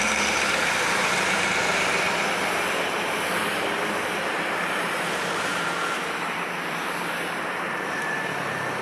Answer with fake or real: fake